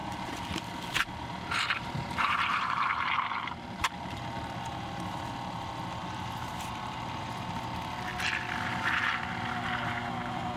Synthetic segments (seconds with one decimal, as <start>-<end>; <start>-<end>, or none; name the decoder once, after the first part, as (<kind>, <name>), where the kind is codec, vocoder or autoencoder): 0.0-4.2 (vocoder, BigVGAN v2); 6.0-7.4; 8.7-9.2